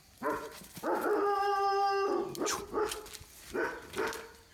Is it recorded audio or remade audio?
recorded